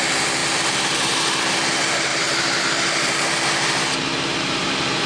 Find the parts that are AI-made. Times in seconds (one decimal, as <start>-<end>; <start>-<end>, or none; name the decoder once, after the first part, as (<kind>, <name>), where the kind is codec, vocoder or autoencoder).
none